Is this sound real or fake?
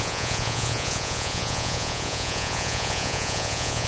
fake